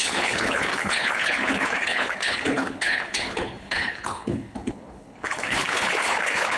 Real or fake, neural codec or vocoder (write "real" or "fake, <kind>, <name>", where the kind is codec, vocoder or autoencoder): fake, codec, HILCodec